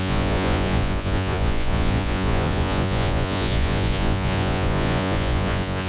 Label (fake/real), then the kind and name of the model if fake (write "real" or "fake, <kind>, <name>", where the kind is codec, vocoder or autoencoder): fake, vocoder, Vocos